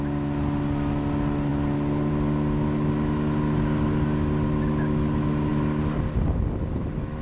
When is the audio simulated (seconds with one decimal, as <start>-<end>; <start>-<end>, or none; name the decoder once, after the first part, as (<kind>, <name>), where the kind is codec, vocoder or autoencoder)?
none